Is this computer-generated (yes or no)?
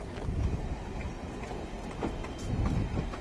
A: no